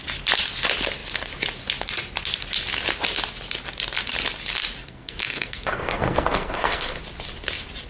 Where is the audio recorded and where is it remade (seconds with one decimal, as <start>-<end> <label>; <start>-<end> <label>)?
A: 0.0-4.8 recorded; 4.8-7.0 remade; 7.0-7.9 recorded